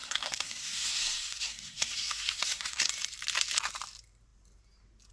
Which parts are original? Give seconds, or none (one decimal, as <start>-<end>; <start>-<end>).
2.9-5.1